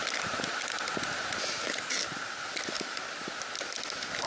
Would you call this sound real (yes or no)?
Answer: yes